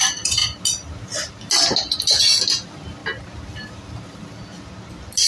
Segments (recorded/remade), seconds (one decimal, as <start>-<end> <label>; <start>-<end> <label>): 0.0-5.3 recorded